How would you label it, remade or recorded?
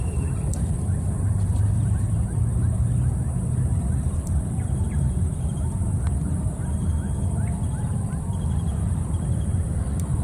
remade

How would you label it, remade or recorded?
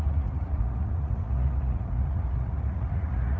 remade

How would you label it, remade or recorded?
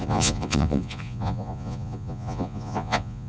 remade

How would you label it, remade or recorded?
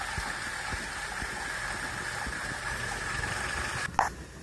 recorded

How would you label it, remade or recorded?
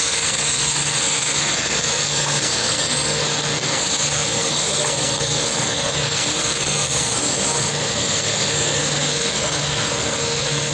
remade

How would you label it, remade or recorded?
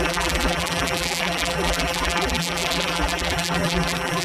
remade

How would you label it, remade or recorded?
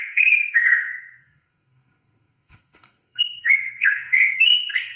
remade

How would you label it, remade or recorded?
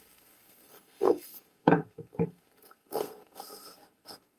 remade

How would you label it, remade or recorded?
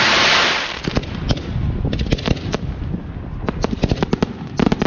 remade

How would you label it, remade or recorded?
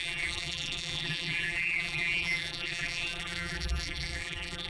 remade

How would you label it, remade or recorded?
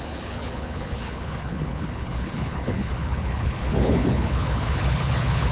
remade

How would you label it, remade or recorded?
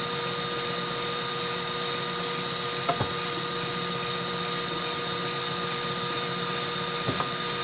recorded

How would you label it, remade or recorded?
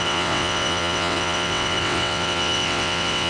remade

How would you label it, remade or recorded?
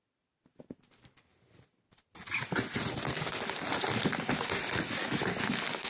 recorded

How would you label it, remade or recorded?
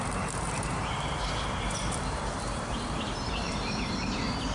remade